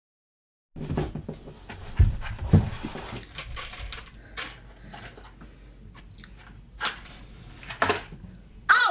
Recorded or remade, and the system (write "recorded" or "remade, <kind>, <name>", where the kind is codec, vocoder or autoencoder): recorded